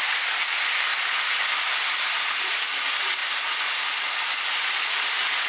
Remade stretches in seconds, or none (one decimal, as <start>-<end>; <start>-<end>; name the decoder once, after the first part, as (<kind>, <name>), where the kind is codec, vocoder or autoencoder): none